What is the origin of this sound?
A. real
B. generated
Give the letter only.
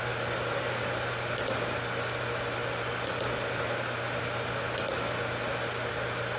B